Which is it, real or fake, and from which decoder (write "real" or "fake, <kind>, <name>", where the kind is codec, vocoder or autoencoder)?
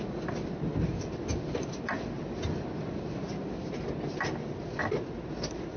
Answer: real